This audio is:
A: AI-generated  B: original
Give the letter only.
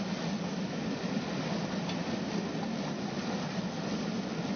B